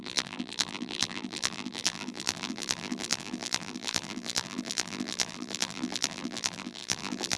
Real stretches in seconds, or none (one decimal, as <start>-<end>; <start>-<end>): none